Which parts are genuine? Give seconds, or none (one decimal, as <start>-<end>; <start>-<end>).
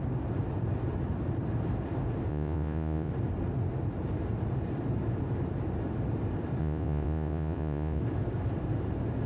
0.0-2.3; 3.1-6.6; 8.0-9.3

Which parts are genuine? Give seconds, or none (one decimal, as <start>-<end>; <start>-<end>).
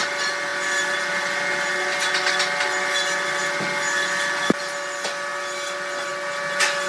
0.0-6.9